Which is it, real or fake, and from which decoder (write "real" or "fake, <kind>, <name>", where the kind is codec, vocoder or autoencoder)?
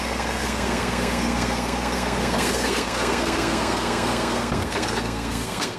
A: fake, codec, SNAC